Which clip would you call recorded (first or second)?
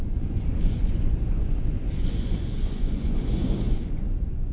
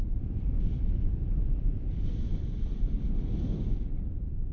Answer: second